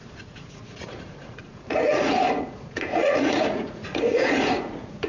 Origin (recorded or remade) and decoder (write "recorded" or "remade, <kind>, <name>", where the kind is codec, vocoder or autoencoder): remade, vocoder, Vocos